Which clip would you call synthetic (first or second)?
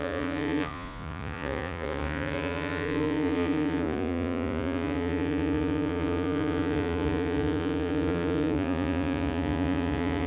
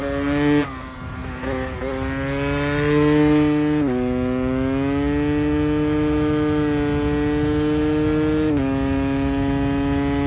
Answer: first